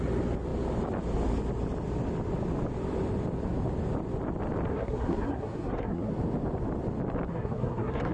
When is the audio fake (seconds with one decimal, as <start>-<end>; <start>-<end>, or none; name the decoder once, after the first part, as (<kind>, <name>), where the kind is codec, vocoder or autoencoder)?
4.7-6.1 (codec, SNAC); 7.3-8.1